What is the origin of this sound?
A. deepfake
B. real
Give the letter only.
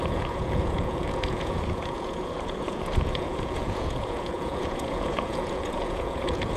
A